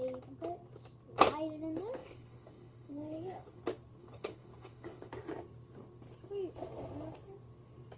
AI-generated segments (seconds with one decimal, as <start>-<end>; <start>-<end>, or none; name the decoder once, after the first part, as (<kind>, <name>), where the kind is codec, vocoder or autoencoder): 2.0-3.6 (codec, HILCodec); 4.0-5.1